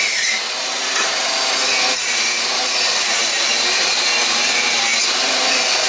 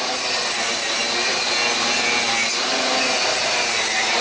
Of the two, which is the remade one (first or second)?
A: first